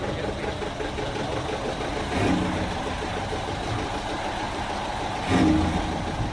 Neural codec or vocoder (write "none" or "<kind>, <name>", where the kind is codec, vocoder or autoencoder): none